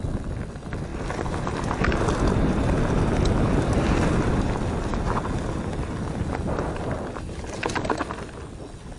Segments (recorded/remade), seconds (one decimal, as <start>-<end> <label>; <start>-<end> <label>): 0.0-9.0 recorded